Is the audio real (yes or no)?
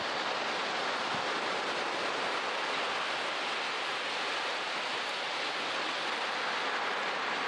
yes